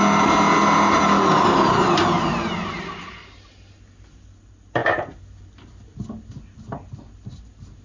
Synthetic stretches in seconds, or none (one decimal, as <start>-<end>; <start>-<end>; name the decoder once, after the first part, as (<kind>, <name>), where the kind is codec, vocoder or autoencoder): none